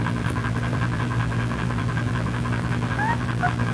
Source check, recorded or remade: remade